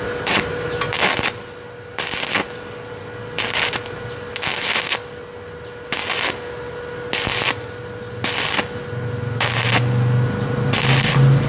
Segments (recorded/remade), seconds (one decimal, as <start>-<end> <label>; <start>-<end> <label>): 0.0-11.5 recorded